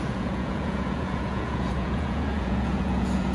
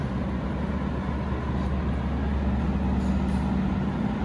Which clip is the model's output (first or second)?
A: first